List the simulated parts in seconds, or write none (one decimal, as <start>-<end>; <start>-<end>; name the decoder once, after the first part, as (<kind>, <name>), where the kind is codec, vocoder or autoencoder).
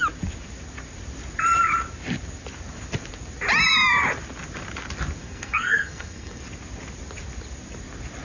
5.2-6.4 (codec, SNAC)